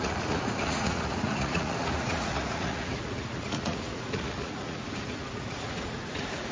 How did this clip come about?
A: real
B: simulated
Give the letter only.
B